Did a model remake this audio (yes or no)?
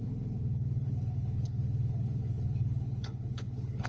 yes